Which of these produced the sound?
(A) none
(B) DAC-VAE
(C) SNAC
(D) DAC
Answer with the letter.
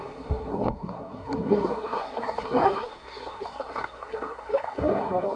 C